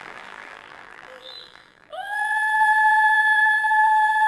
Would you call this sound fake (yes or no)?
yes